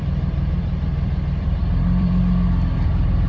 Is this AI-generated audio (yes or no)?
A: yes